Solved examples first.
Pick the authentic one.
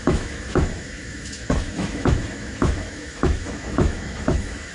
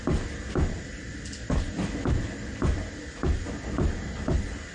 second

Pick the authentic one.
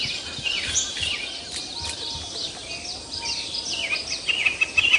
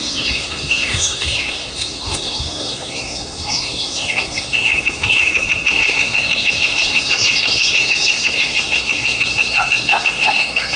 first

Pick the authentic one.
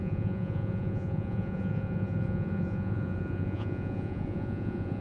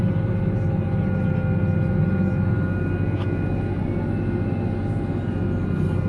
second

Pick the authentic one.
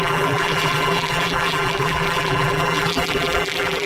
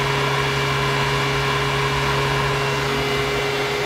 second